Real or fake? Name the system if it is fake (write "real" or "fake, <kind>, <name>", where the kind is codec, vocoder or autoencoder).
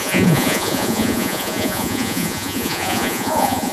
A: fake, vocoder, Vocos